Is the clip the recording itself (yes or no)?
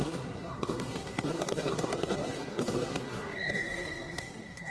no